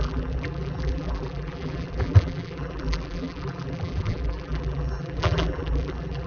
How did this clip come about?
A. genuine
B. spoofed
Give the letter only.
B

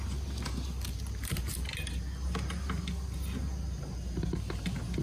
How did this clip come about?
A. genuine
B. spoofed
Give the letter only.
A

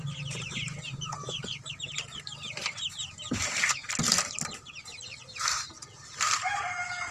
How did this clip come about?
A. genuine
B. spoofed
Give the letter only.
B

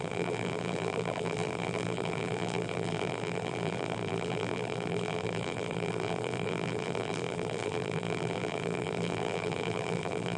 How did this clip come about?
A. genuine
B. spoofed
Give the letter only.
B